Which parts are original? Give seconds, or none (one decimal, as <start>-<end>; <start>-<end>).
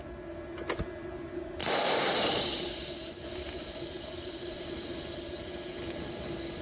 0.0-1.6; 5.2-6.6